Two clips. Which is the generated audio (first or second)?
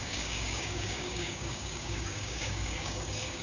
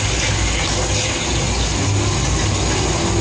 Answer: first